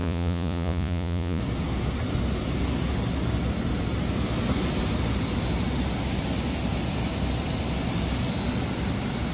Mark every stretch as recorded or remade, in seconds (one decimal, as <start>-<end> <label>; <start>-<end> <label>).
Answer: 0.0-1.4 remade; 1.4-9.3 recorded